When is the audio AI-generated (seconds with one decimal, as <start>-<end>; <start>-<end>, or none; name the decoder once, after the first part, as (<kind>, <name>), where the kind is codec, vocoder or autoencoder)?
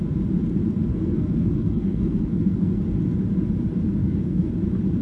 0.9-2.8 (codec, SNAC); 4.0-4.5